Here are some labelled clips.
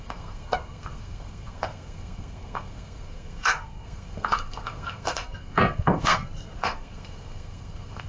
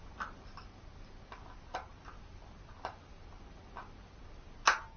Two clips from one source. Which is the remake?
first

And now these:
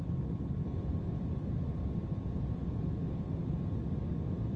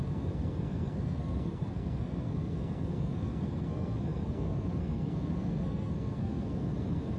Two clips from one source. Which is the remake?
second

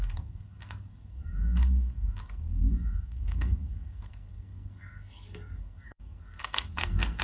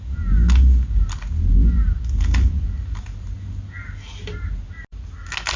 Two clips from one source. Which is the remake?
first